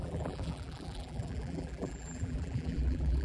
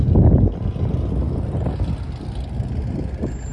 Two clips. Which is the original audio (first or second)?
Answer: second